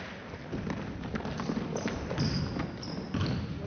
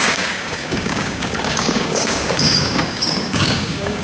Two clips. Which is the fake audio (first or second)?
second